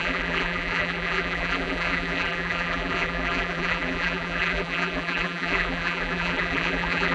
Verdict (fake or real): fake